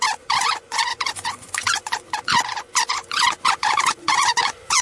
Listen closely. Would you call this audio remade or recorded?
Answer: remade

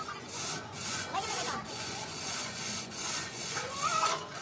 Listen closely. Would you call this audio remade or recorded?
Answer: remade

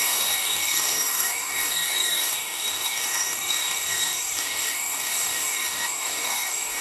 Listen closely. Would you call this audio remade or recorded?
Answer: remade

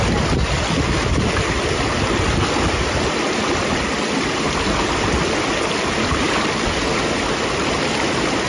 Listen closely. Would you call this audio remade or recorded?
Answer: recorded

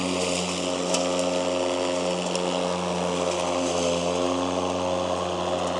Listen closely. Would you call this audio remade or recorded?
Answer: recorded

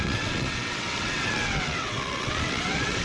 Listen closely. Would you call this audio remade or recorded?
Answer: remade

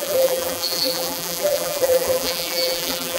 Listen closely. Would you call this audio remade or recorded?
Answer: remade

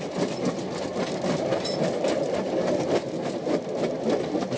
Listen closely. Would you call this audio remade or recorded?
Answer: recorded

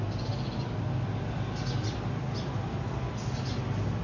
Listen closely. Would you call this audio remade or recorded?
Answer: recorded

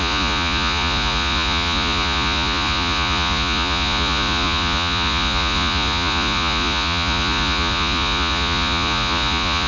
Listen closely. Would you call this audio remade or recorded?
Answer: remade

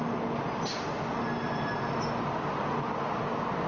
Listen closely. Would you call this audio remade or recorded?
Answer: recorded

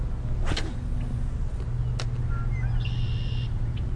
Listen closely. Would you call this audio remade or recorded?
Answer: recorded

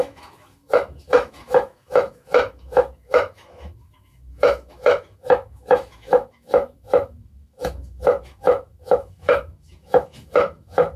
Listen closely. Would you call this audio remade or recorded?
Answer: remade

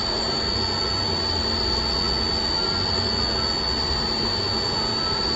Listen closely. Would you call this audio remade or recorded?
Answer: recorded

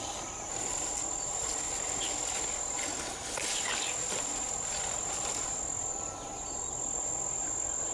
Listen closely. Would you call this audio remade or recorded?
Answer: recorded